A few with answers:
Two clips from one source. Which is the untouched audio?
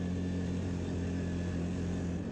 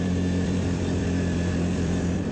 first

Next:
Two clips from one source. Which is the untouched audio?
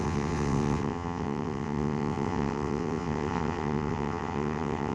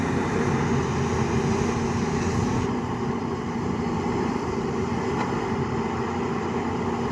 second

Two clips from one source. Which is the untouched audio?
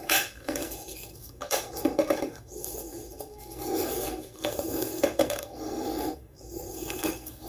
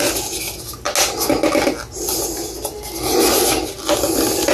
second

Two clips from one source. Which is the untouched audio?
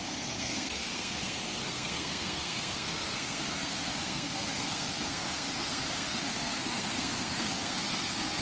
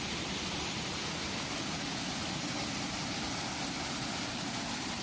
second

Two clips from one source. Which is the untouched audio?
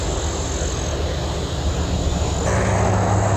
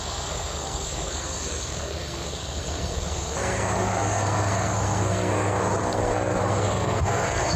first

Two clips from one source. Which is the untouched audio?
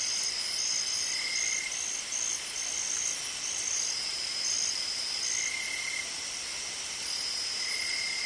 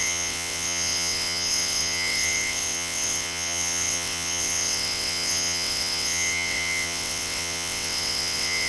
first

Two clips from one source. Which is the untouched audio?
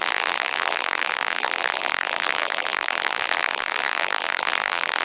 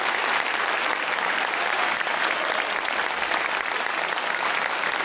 second